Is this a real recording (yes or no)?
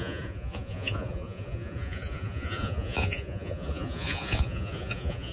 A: no